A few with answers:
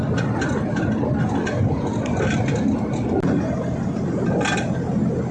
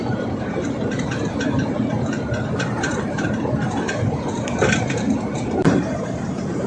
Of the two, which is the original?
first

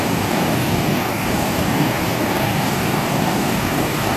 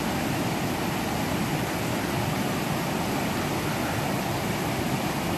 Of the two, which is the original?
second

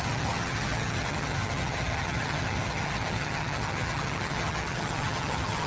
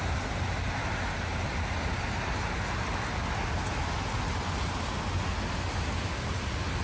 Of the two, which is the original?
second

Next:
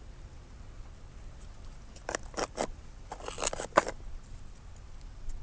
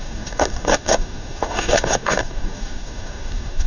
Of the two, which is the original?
first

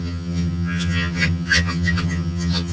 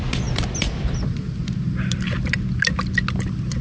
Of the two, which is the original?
second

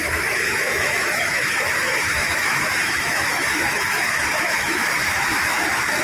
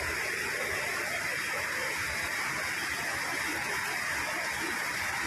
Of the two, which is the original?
second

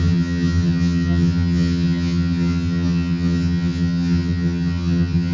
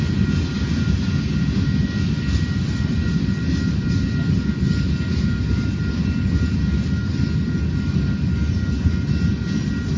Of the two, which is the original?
second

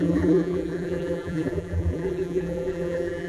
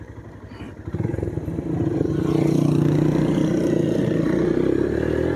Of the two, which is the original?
second